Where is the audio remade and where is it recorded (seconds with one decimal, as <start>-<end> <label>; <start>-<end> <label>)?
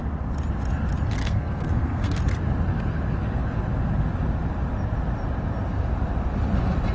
0.0-1.2 recorded; 1.2-2.2 remade; 2.2-6.9 recorded